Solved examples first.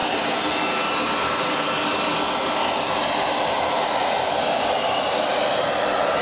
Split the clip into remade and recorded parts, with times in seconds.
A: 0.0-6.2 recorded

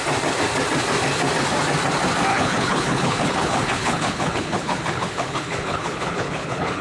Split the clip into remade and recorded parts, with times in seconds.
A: 0.0-2.3 recorded; 2.3-6.8 remade

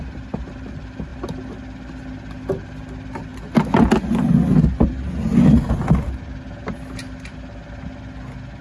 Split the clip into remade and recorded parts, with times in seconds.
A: 0.0-8.6 recorded

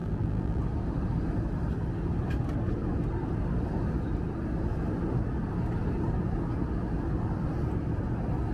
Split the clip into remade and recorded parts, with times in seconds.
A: 0.0-0.6 remade; 0.6-8.5 recorded

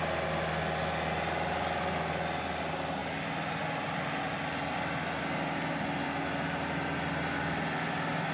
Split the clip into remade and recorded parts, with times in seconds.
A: 0.0-8.3 recorded

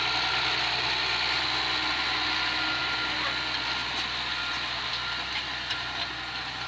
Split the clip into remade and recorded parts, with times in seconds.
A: 0.0-6.7 recorded

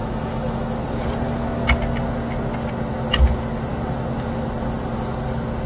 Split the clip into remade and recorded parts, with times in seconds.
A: 0.0-0.8 remade; 0.8-5.7 recorded

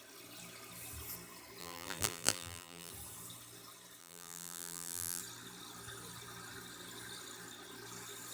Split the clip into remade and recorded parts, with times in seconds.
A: 0.0-1.6 recorded; 1.6-2.9 remade; 2.9-4.0 recorded; 4.0-5.2 remade; 5.2-8.3 recorded